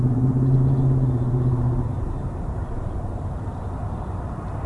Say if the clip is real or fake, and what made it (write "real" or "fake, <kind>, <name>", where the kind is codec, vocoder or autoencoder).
fake, vocoder, BigVGAN v2